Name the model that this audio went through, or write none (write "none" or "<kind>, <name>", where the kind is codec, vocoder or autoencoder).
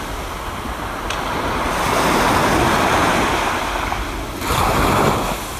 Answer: none